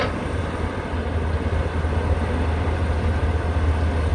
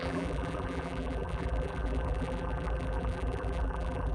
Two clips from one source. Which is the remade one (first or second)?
second